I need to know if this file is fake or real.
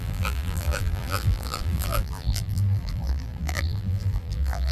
fake